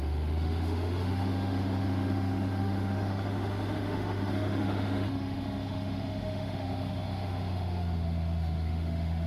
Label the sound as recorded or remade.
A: remade